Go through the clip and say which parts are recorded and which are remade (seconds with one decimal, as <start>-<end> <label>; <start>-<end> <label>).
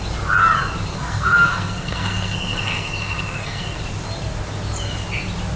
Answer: 0.0-0.9 recorded; 0.9-3.8 remade; 3.8-5.6 recorded